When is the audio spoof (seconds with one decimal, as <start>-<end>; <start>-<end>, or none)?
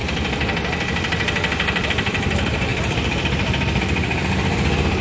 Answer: 0.0-1.9; 2.7-3.8